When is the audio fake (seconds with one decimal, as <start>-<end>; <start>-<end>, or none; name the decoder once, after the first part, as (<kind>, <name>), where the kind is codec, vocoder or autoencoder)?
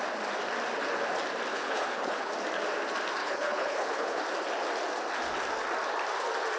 1.5-2.3 (codec, HILCodec); 3.2-4.2